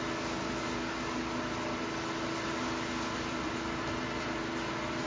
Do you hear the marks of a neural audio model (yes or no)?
no